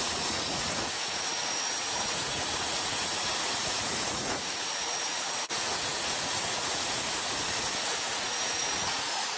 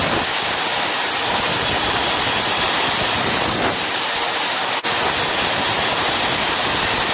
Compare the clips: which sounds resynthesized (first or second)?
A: first